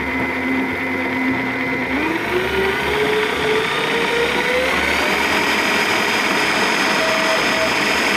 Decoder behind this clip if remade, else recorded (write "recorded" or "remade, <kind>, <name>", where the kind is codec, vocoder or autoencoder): recorded